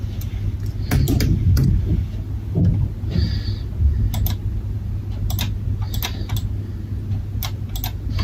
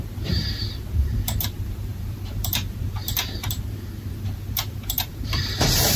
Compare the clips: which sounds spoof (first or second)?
second